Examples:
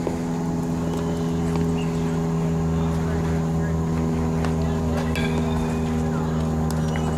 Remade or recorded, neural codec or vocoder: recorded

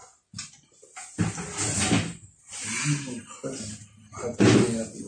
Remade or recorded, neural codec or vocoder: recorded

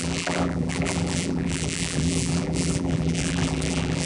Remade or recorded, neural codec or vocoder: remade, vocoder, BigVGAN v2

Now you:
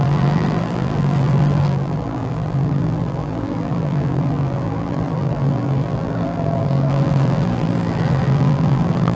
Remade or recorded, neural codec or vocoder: remade, vocoder, BigVGAN v2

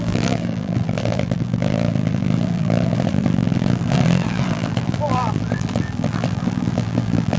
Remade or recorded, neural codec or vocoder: remade, vocoder, BigVGAN v2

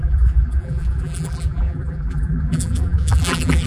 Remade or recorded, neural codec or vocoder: remade, vocoder, BigVGAN v2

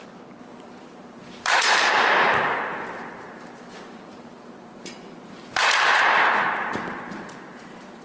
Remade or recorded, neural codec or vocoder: remade, vocoder, BigVGAN v2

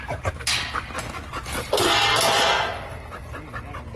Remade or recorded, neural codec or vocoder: recorded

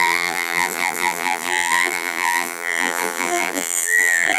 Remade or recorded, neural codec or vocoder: remade, vocoder, BigVGAN v2